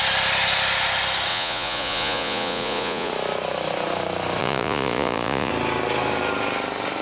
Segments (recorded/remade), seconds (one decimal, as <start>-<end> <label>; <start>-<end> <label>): 0.0-1.3 recorded; 1.3-3.1 remade; 3.1-4.4 recorded; 4.4-5.5 remade; 5.5-7.0 recorded